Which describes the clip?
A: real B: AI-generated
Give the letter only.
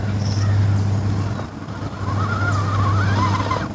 A